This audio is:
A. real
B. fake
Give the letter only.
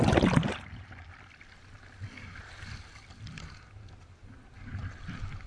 A